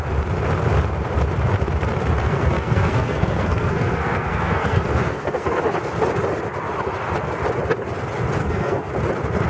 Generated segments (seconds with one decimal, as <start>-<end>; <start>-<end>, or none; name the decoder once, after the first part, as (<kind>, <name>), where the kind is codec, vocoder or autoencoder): 2.2-5.6 (codec, SNAC); 8.4-8.9